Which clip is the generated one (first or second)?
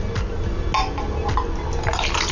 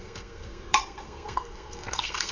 second